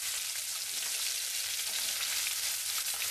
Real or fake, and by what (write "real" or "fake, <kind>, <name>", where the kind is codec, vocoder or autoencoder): real